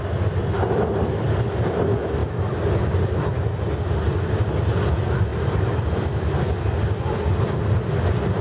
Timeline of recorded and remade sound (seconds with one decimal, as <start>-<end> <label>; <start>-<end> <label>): 0.0-5.3 recorded; 5.3-6.0 remade; 6.0-8.4 recorded